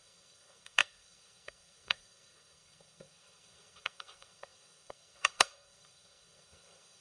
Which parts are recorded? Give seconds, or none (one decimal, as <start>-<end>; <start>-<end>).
none